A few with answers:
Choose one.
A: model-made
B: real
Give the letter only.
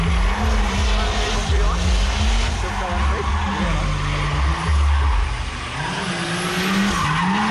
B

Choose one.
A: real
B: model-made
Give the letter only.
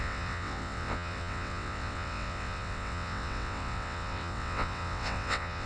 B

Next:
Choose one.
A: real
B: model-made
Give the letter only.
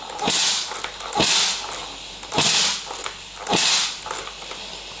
A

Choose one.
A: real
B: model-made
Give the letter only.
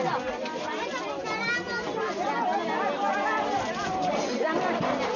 A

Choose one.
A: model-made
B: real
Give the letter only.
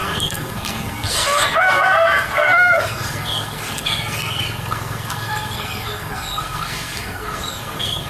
A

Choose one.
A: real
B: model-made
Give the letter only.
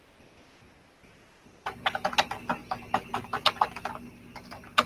A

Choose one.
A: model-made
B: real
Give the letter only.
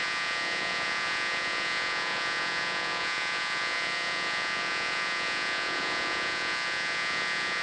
A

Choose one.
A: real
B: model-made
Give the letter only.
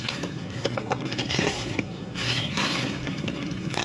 B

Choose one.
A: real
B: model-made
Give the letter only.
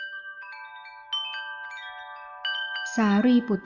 A